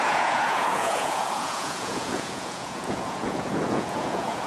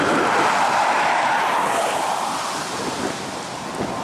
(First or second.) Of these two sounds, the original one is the second